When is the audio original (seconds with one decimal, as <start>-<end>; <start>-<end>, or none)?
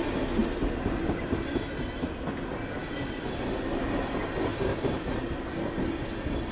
0.0-0.4; 1.4-2.8; 3.8-4.5; 5.8-6.5